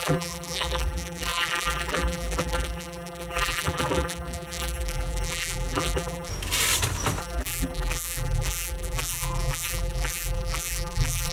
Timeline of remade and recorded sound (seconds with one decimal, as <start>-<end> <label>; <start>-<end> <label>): 0.0-6.3 remade; 6.3-7.2 recorded; 7.2-11.3 remade